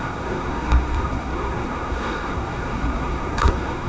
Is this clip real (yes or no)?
no